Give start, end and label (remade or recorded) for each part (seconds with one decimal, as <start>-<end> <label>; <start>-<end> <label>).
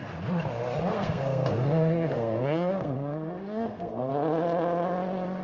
0.0-0.9 recorded; 0.9-4.1 remade; 4.1-5.4 recorded